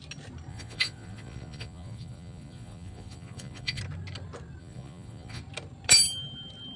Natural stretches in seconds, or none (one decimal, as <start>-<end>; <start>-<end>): 0.0-0.5; 3.8-4.6; 5.4-6.8